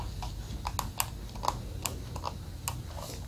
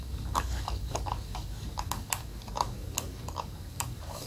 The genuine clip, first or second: first